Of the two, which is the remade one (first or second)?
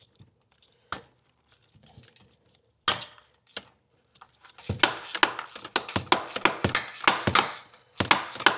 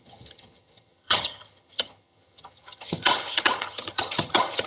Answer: second